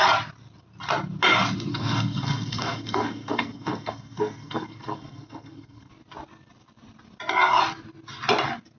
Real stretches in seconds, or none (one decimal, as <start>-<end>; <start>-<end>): 0.0-1.7; 5.9-8.8